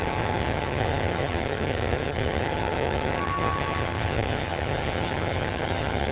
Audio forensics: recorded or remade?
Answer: remade